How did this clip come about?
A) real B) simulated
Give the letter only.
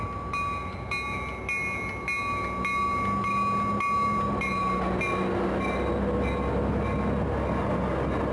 A